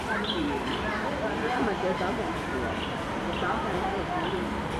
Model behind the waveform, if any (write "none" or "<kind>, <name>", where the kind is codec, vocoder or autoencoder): vocoder, BigVGAN v2